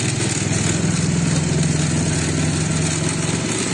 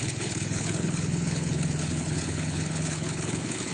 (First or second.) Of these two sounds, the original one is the first